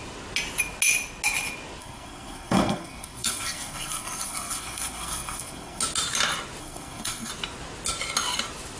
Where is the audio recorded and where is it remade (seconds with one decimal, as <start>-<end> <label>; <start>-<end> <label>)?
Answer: 0.0-1.8 recorded; 1.8-5.8 remade; 5.8-6.6 recorded; 6.6-7.3 remade; 7.3-8.8 recorded